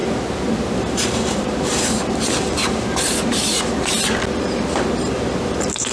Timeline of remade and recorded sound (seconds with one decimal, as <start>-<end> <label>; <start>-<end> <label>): 0.0-3.9 remade; 3.9-5.4 recorded; 5.4-5.9 remade

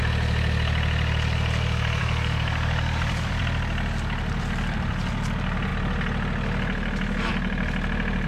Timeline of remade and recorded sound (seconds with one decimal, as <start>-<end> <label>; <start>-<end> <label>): 0.0-2.0 recorded; 2.0-3.4 remade; 3.4-8.3 recorded

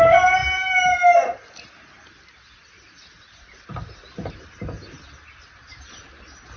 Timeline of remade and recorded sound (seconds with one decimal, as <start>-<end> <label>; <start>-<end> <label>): 0.0-6.6 recorded

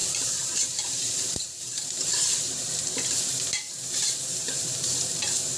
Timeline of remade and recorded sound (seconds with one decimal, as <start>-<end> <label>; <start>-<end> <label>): 0.0-5.6 remade

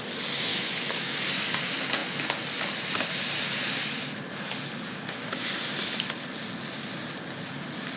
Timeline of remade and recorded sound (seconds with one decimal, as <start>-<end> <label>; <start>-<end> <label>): 0.0-0.5 recorded; 0.5-1.1 remade; 1.1-8.0 recorded